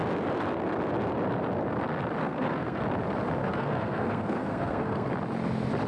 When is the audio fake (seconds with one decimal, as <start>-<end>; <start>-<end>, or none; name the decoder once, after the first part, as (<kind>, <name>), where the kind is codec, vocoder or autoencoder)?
2.2-2.8 (codec, SNAC); 3.4-5.1